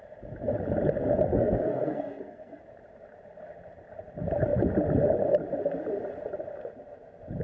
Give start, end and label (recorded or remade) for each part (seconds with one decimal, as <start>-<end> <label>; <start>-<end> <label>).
0.0-1.3 recorded; 1.3-2.6 remade; 2.6-7.4 recorded